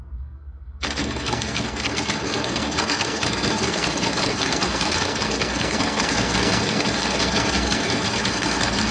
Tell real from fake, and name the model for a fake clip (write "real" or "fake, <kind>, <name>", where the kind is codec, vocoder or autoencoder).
fake, codec, SNAC